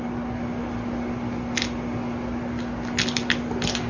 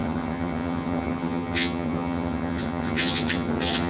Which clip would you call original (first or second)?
first